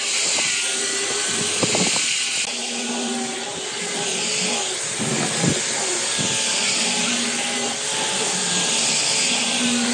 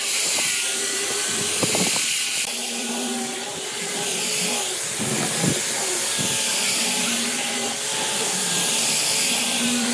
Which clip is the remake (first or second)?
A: second